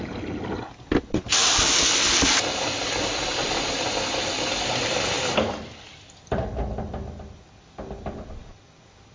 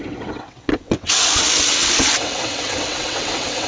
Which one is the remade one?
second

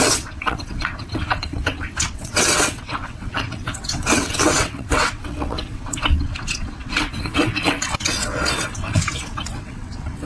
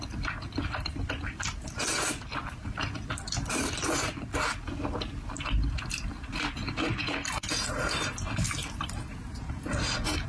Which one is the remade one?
first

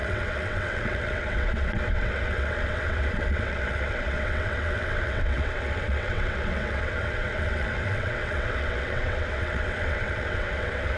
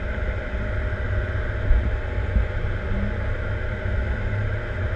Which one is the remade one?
first